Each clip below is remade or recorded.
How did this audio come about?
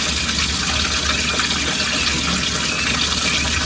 recorded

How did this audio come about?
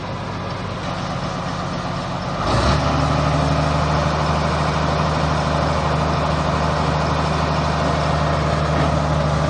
recorded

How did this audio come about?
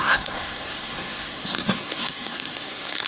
remade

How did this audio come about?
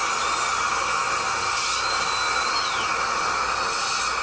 recorded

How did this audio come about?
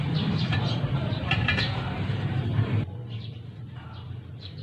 remade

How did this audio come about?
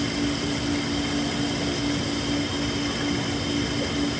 recorded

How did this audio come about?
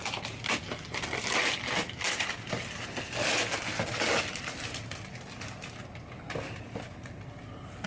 recorded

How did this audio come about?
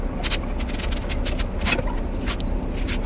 recorded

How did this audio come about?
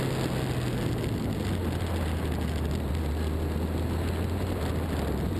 recorded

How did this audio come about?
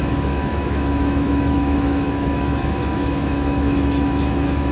remade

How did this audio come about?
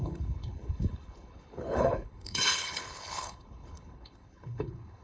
remade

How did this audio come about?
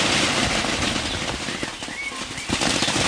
recorded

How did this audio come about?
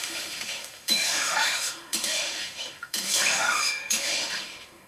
remade